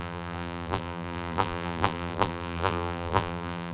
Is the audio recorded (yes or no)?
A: no